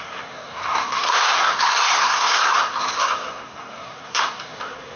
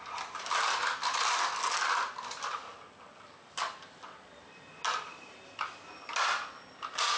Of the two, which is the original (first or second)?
second